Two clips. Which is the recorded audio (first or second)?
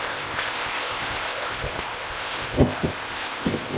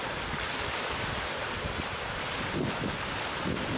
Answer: second